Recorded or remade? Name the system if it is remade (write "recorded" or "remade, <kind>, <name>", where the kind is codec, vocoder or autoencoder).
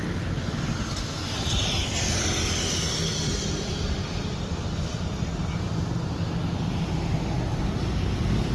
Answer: recorded